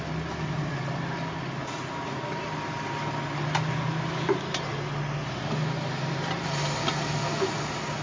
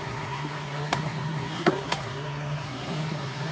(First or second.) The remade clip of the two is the second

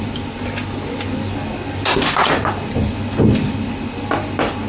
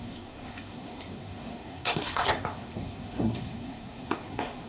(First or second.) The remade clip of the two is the second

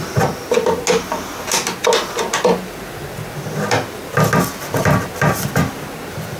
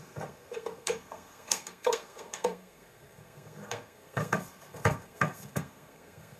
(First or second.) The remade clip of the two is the second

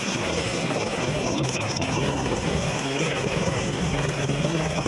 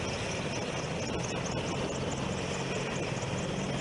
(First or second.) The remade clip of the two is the first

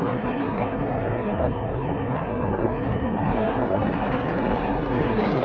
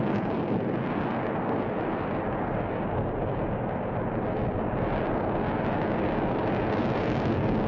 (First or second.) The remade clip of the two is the first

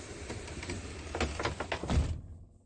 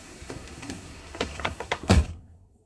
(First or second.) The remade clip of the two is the second